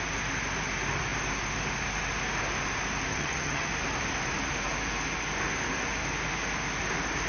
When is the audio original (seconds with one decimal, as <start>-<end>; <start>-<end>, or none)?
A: 0.0-3.1; 3.7-7.3